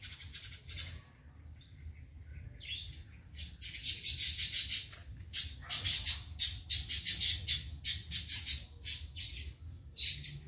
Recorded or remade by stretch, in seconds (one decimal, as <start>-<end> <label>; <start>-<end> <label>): 0.0-5.0 recorded; 5.0-6.1 remade; 6.1-10.5 recorded